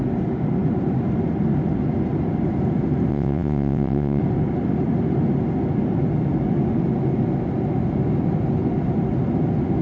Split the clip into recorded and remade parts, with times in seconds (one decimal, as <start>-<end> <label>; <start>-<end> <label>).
0.0-3.1 recorded; 3.1-4.2 remade; 4.2-9.8 recorded